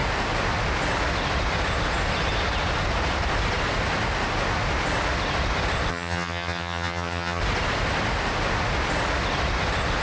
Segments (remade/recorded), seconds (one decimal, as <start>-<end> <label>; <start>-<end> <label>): 0.0-5.9 recorded; 5.9-7.4 remade; 7.4-10.0 recorded

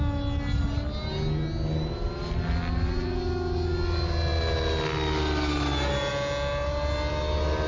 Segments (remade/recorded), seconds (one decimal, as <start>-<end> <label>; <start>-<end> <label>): 0.0-7.7 recorded

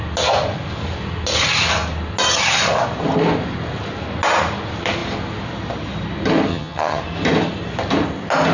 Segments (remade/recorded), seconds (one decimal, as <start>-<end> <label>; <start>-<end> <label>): 0.0-6.5 recorded; 6.5-7.0 remade; 7.0-8.5 recorded

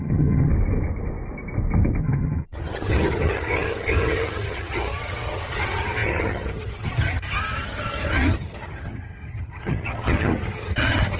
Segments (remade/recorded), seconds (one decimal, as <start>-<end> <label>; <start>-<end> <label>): 0.0-0.5 remade; 0.5-2.0 recorded; 2.0-11.2 remade